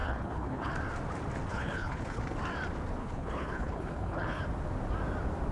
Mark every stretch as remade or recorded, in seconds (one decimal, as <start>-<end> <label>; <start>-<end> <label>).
0.0-0.7 remade; 0.7-1.5 recorded; 1.5-2.2 remade; 2.2-3.0 recorded; 3.0-4.4 remade; 4.4-5.5 recorded